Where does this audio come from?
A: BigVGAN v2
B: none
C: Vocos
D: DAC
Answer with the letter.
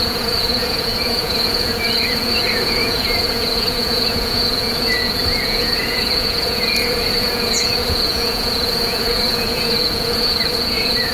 C